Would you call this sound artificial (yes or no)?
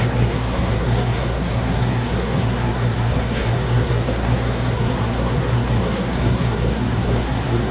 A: yes